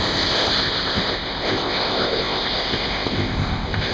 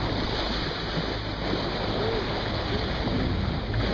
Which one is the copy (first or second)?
first